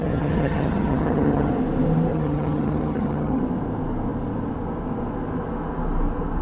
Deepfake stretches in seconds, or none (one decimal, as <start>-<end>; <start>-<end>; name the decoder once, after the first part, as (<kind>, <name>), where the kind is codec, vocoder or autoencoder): 0.0-1.5 (vocoder, HiFi-GAN); 2.1-3.4